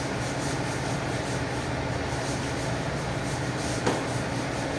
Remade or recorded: recorded